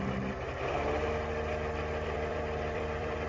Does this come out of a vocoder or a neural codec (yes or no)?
yes